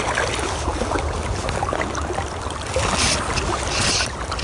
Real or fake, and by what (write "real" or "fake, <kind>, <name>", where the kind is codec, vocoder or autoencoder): real